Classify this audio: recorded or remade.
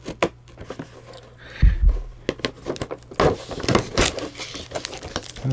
recorded